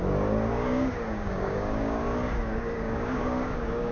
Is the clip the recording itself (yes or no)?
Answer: no